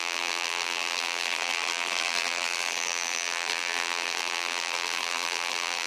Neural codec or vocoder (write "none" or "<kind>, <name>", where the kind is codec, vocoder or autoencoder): vocoder, BigVGAN v2